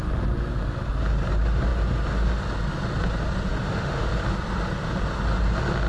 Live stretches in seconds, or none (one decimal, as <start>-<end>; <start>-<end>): 0.0-3.5; 4.1-5.9